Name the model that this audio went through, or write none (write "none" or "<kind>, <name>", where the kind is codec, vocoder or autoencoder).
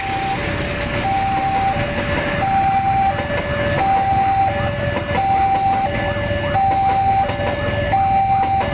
none